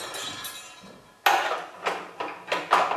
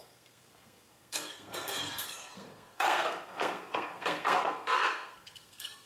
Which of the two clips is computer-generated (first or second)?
second